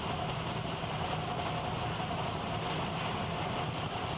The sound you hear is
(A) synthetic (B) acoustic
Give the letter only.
B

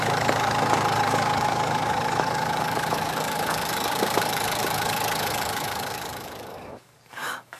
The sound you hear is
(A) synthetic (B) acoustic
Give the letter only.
A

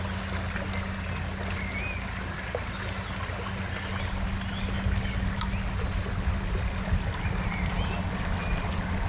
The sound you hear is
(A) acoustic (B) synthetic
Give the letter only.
A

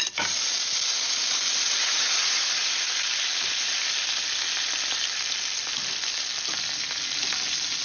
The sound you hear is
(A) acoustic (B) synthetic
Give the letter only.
A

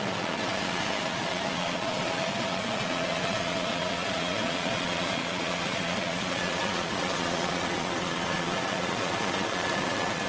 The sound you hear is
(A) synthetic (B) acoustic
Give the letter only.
A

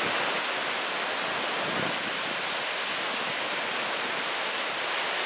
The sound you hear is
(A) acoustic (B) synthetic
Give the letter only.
A